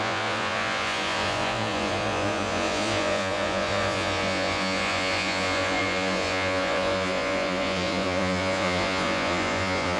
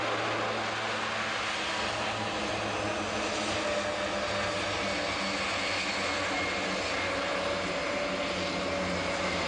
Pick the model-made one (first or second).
first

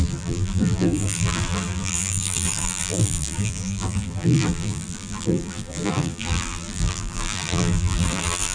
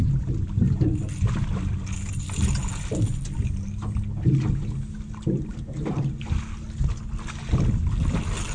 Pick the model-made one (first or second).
first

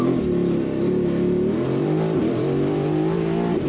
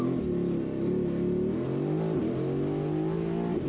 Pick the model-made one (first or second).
first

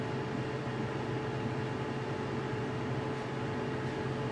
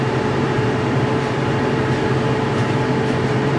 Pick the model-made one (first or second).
second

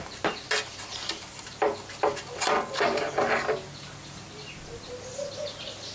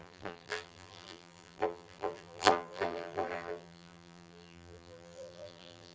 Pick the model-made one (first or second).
second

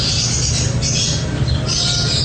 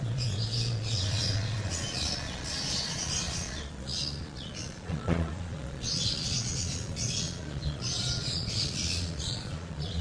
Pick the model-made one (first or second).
second